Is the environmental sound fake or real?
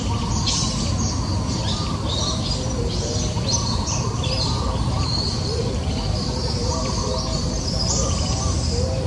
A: real